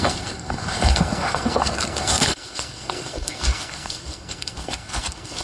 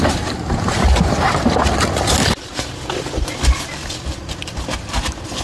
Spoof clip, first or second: first